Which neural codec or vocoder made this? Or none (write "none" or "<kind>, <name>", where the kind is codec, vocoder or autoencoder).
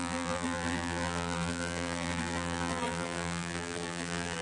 vocoder, BigVGAN v2